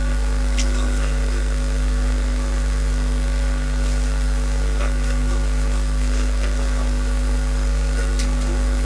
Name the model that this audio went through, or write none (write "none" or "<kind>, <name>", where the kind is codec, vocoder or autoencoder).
codec, SNAC